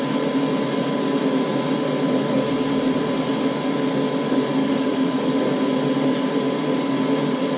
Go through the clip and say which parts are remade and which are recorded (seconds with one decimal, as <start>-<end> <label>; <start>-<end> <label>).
0.0-4.6 recorded; 4.6-5.4 remade; 5.4-7.6 recorded